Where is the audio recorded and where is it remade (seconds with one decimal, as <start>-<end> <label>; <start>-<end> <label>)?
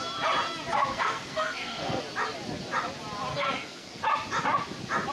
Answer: 0.0-0.9 recorded; 0.9-2.0 remade; 2.0-3.3 recorded; 3.3-4.0 remade; 4.0-5.1 recorded